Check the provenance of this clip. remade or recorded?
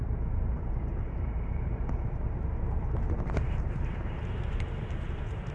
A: remade